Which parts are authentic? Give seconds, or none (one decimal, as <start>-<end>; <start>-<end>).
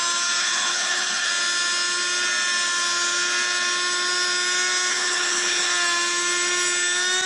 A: 0.0-0.4; 1.3-4.9; 5.7-7.3